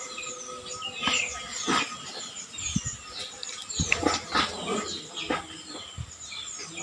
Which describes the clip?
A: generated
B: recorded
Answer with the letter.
B